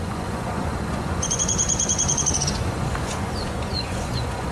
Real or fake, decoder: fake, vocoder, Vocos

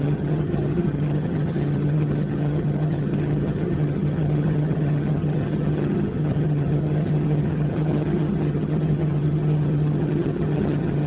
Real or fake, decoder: fake, vocoder, HiFi-GAN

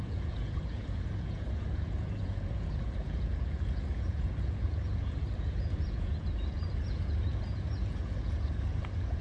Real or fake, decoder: fake, vocoder, Vocos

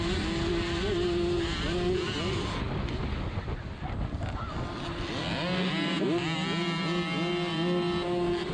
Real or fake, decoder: real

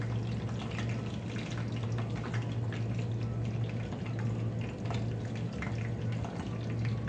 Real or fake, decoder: real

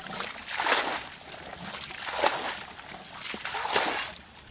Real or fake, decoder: real